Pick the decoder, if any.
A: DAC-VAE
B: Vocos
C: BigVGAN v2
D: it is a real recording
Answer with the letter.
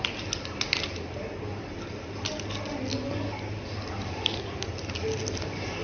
C